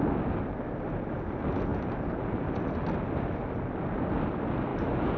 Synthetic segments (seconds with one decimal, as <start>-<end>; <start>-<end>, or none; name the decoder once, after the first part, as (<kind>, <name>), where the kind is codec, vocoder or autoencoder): none